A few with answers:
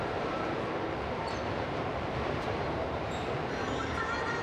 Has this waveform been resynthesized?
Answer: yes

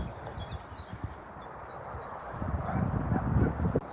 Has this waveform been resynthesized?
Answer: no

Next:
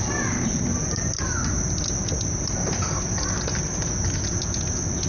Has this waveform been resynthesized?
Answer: no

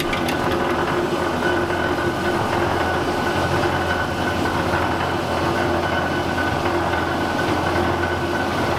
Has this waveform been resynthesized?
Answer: no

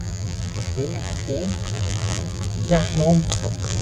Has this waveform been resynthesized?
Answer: yes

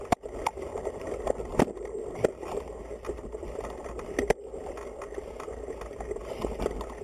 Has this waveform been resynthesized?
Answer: no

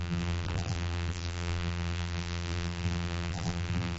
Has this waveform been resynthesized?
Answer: yes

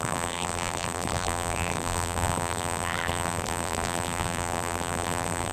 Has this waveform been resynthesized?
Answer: yes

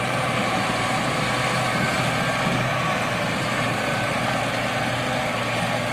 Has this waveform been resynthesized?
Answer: yes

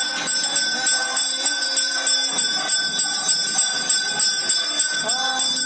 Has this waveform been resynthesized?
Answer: no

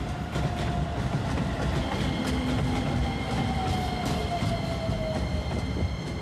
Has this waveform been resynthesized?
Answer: no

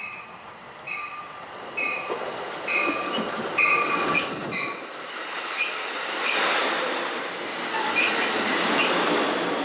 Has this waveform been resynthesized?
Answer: yes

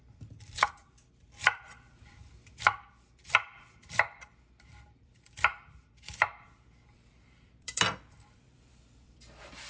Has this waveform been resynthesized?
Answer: yes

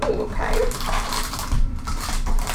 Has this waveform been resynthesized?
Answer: yes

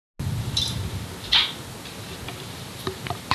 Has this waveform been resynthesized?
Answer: no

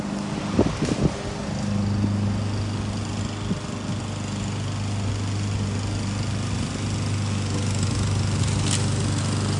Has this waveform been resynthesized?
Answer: no